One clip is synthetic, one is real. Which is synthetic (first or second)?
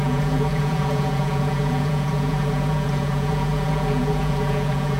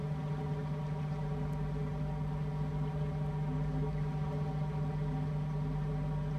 first